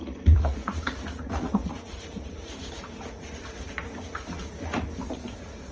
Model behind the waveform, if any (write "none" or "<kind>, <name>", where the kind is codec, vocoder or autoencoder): vocoder, Vocos